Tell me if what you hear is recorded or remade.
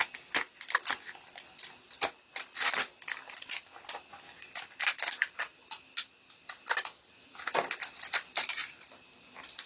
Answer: recorded